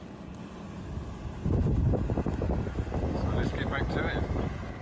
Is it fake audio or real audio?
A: real